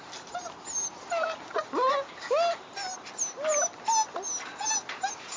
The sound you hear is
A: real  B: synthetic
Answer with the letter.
A